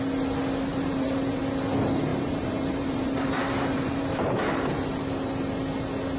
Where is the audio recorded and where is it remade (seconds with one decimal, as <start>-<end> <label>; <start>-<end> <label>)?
0.0-0.7 recorded; 0.7-1.4 remade; 1.4-2.1 recorded; 2.1-5.3 remade; 5.3-6.2 recorded